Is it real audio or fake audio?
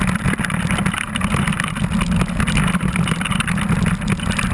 real